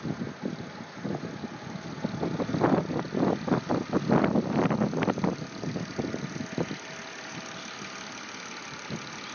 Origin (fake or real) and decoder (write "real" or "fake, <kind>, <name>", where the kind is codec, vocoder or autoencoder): real